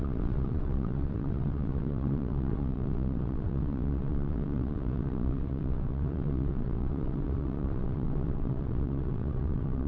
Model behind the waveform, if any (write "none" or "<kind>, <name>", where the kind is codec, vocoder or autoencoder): vocoder, WaveNeXt